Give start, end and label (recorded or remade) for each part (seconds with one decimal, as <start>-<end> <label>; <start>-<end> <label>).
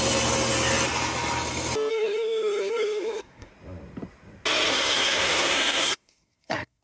0.0-1.9 recorded; 1.9-3.5 remade; 3.5-4.7 recorded; 4.7-6.8 remade